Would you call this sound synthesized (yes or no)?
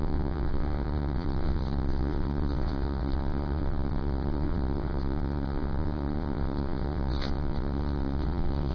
yes